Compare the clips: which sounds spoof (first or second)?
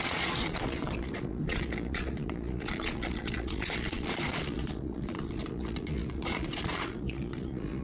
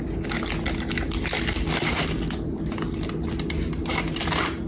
first